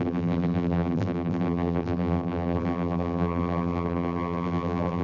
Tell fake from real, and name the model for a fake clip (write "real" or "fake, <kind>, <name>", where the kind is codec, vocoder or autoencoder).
fake, vocoder, BigVGAN v2